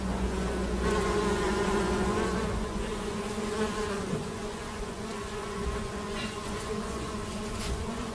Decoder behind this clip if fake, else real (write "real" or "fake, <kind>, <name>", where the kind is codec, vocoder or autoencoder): fake, vocoder, Vocos